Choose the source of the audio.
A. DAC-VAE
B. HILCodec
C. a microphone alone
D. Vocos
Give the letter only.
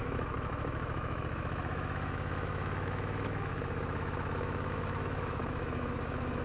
A